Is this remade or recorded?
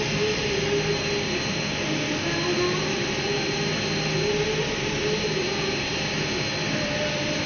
recorded